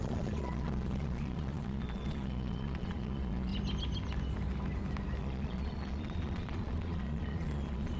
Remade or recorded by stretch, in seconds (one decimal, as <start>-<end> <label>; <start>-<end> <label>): 0.0-3.5 remade; 3.5-5.2 recorded; 5.2-8.0 remade